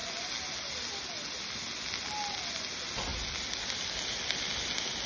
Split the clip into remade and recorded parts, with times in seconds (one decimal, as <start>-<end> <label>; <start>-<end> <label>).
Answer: 0.0-5.1 recorded